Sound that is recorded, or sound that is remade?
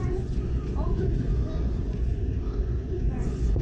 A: remade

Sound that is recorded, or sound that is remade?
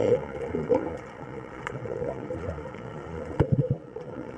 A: remade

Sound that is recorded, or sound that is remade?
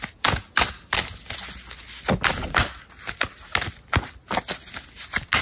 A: recorded